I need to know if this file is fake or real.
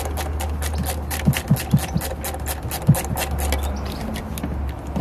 real